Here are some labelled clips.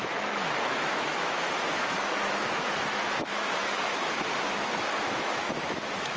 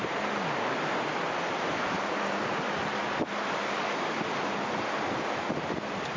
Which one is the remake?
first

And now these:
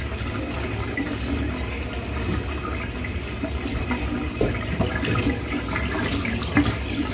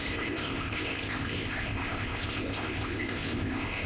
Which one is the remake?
second